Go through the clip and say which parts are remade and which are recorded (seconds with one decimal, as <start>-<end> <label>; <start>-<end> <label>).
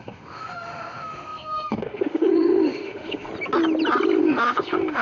0.0-3.3 remade; 3.3-4.2 recorded; 4.2-5.0 remade